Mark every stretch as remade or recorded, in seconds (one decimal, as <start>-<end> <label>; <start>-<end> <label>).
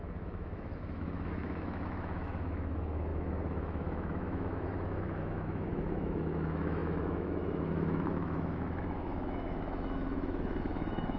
0.0-11.2 remade